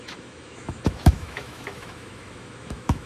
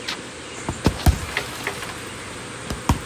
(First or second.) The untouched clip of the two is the second